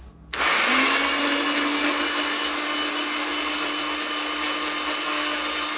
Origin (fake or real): real